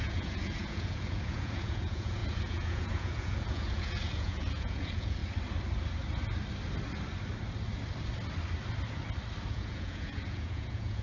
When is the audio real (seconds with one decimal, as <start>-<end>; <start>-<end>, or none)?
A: 5.2-9.5